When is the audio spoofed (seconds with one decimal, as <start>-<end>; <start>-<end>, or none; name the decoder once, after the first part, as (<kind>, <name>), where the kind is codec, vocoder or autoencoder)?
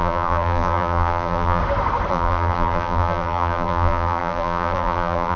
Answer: 0.0-1.6 (vocoder, BigVGAN v2); 2.1-5.4